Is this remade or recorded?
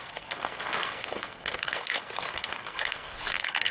remade